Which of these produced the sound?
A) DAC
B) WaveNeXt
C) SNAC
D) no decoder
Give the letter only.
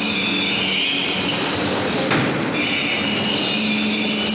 D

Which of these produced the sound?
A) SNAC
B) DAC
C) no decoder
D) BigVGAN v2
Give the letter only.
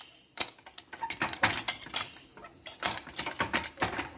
C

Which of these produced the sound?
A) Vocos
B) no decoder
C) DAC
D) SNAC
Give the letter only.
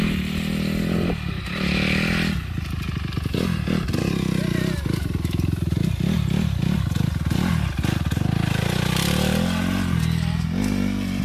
B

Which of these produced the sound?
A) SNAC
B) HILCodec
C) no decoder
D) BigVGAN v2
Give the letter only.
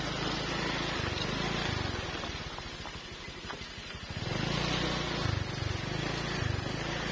C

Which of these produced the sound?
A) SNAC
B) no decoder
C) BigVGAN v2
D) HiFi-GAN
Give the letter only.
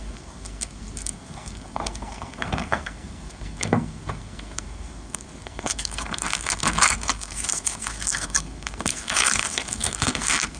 A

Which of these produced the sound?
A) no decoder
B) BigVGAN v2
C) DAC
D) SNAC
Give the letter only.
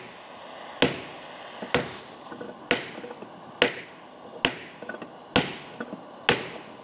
A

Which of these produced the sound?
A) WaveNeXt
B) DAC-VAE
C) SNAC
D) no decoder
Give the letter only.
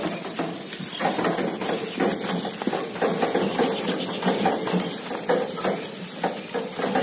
D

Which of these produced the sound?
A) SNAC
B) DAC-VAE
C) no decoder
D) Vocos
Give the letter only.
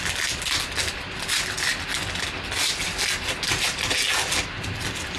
C